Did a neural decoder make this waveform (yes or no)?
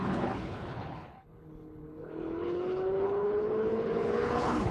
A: yes